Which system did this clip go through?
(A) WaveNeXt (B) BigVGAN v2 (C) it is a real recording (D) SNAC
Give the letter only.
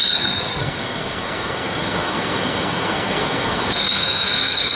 D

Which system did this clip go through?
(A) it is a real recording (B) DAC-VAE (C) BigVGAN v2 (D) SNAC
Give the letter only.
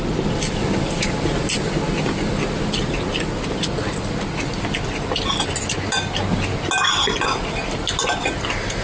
A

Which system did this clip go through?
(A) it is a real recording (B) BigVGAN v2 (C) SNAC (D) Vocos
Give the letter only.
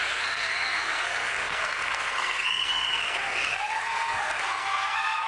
C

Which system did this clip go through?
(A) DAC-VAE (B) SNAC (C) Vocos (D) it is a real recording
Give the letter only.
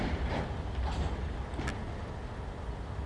D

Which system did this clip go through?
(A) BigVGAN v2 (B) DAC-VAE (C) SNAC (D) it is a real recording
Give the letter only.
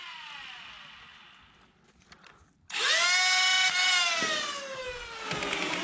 D